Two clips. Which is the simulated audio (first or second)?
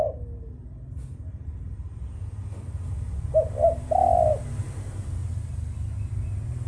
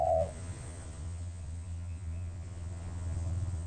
second